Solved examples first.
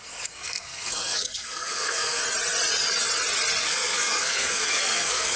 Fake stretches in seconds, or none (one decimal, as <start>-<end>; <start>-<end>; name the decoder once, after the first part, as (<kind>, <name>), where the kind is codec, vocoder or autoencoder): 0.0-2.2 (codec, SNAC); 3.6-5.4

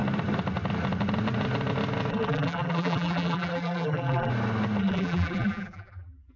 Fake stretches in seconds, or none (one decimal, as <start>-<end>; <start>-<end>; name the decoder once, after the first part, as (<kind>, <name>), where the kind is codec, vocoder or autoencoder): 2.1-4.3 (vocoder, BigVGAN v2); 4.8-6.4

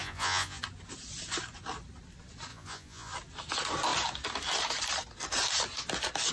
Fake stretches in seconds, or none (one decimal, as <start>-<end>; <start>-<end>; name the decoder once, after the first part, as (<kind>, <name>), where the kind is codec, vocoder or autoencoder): 0.0-0.6 (vocoder, Vocos); 2.5-3.1